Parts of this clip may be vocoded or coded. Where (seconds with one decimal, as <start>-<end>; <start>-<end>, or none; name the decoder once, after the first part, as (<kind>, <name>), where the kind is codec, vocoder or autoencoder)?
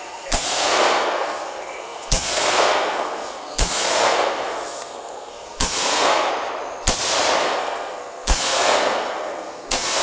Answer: 0.0-6.3 (codec, SNAC); 7.4-10.0